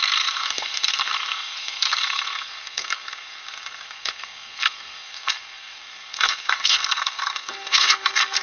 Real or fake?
fake